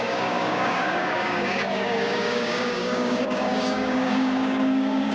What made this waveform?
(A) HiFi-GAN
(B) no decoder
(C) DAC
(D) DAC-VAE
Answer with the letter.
C